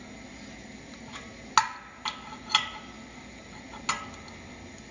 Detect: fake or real real